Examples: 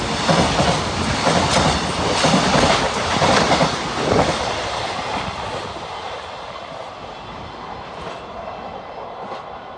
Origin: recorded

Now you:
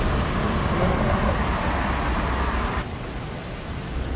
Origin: recorded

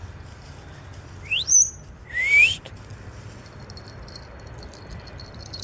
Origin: remade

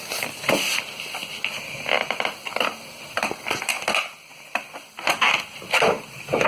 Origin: recorded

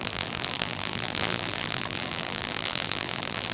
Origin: remade